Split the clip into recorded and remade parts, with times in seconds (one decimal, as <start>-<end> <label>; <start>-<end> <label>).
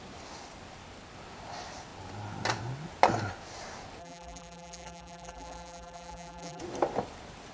0.0-4.0 recorded; 4.0-6.6 remade; 6.6-7.5 recorded